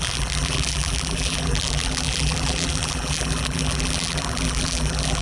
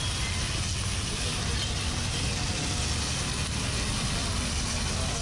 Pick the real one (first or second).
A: second